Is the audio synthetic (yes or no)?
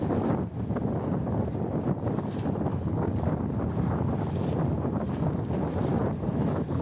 no